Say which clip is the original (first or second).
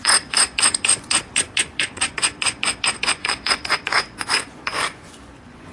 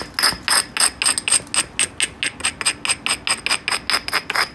second